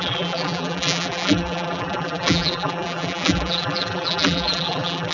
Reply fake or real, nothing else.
fake